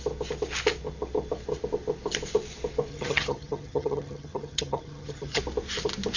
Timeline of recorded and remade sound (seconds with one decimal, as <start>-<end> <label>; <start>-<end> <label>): 0.0-2.9 recorded; 2.9-5.4 remade; 5.4-6.2 recorded

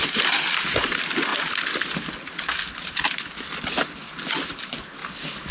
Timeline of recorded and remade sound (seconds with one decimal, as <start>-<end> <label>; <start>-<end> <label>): 0.0-1.3 remade; 1.3-4.6 recorded; 4.6-5.0 remade; 5.0-5.5 recorded

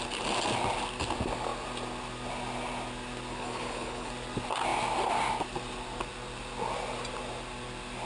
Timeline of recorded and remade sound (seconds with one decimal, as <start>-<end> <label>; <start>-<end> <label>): 0.0-3.3 recorded; 3.3-4.1 remade; 4.1-8.1 recorded